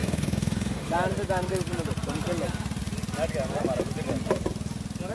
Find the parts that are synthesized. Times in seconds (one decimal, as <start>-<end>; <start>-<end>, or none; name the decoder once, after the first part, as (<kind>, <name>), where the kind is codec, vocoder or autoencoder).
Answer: 0.0-0.9 (autoencoder, DAC-VAE)